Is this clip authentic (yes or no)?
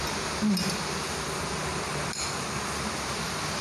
yes